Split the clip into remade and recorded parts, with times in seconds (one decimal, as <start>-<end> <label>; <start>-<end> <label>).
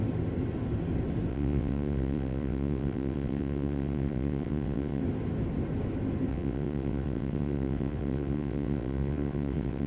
0.0-1.3 recorded; 1.3-5.0 remade; 5.0-6.3 recorded; 6.3-9.9 remade